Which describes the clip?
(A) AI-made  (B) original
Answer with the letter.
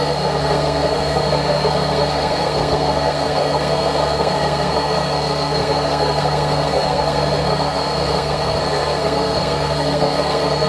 A